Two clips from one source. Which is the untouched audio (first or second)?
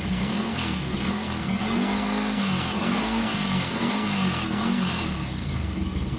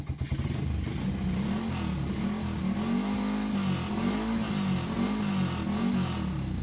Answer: second